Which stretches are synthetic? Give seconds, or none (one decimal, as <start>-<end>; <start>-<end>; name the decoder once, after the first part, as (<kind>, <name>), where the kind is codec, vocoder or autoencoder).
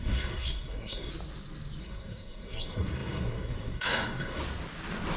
0.0-1.1 (codec, SNAC); 1.8-4.4